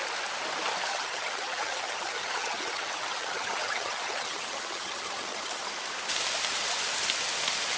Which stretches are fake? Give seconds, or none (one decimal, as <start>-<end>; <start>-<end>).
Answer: 0.9-5.6